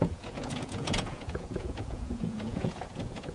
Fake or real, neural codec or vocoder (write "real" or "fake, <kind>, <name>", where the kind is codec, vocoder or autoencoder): fake, vocoder, Vocos